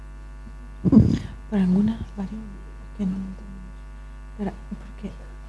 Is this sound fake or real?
real